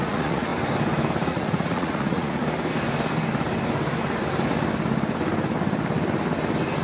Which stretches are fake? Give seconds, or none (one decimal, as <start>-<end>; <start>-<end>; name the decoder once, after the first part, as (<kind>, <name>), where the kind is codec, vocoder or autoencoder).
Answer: 0.0-0.5 (vocoder, Vocos); 1.3-2.4